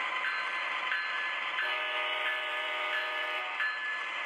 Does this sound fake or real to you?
fake